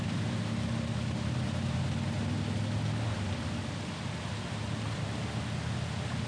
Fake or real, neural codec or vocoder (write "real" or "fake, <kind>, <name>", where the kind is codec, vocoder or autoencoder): real